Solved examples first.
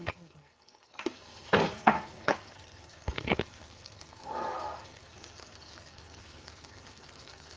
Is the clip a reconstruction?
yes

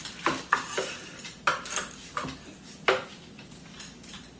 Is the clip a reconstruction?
no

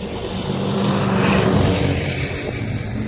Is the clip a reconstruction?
no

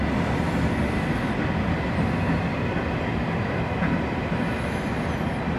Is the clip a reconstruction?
no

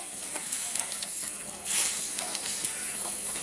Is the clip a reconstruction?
yes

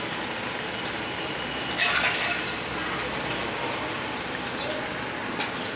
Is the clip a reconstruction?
no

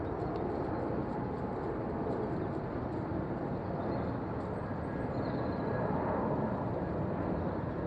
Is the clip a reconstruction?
no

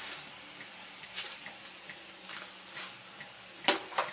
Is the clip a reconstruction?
no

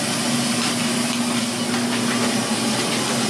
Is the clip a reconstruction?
no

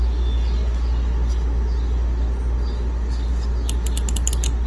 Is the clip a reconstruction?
no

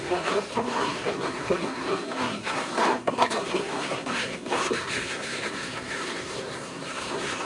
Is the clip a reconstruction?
yes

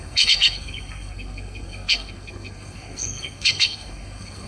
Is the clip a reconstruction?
yes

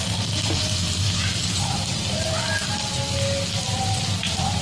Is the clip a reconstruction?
no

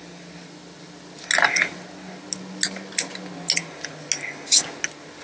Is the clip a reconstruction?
no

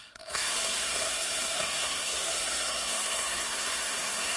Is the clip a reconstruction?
yes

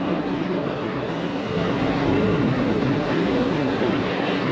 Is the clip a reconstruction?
yes